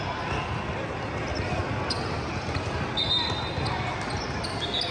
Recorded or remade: recorded